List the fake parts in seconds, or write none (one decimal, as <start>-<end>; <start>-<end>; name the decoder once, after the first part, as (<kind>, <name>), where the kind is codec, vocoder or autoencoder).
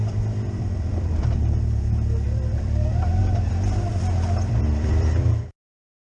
0.0-1.4 (vocoder, BigVGAN v2); 2.5-3.2; 3.9-6.2